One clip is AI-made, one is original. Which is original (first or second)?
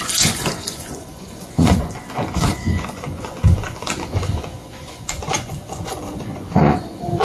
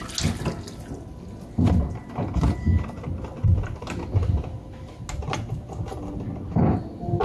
second